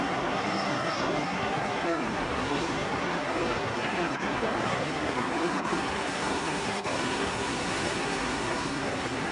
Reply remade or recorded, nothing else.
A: remade